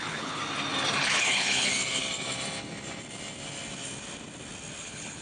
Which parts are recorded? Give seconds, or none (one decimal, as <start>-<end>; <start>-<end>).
0.4-1.0; 1.7-4.8